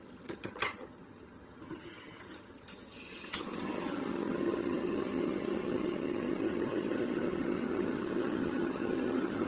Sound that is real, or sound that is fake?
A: fake